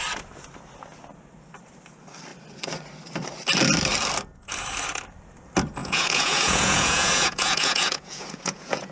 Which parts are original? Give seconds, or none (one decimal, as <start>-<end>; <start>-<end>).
0.0-5.8